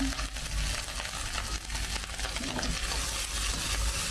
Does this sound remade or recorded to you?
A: recorded